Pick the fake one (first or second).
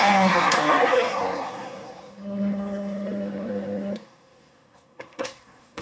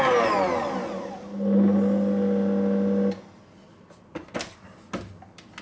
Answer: first